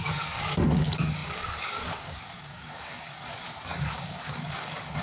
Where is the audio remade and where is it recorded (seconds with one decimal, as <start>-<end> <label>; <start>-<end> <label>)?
0.0-5.0 remade